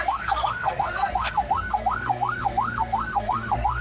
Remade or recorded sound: remade